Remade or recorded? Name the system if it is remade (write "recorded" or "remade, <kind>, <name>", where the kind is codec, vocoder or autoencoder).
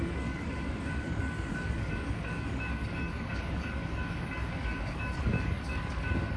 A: remade, codec, DAC